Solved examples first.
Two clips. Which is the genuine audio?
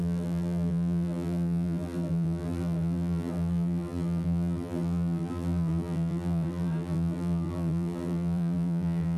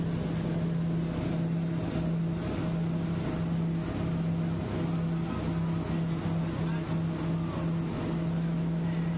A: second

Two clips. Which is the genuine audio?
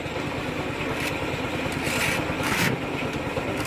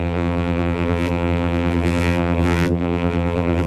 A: first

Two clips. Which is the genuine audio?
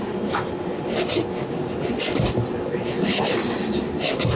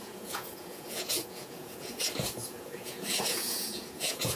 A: first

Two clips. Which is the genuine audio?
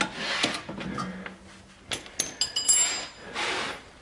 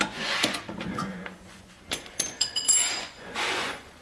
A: first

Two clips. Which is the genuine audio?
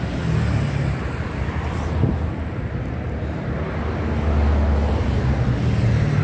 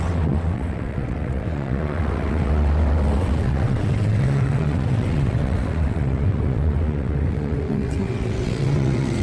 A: first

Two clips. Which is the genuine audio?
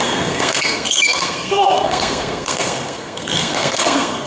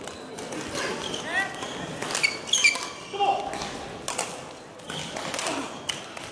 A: second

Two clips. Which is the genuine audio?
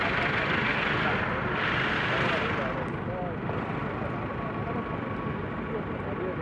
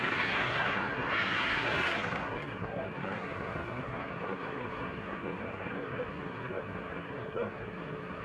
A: first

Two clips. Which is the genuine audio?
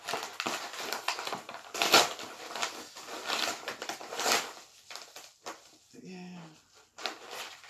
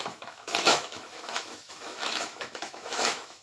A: first